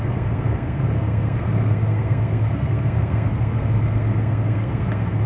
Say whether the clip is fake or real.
fake